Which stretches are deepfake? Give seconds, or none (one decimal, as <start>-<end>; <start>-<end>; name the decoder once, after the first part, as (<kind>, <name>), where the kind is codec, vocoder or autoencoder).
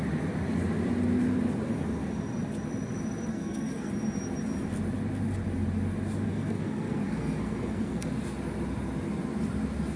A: 3.3-3.9 (codec, SNAC); 6.3-8.1